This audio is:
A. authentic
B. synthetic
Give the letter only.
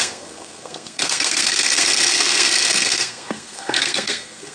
B